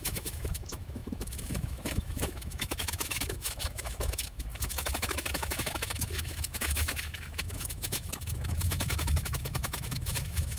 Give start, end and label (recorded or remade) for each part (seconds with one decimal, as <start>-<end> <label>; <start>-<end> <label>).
0.0-10.6 remade